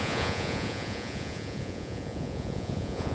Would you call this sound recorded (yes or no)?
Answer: no